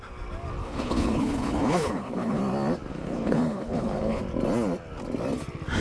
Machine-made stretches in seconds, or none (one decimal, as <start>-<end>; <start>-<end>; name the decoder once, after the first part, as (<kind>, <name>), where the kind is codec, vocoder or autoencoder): 0.6-2.4 (codec, HILCodec); 2.9-4.2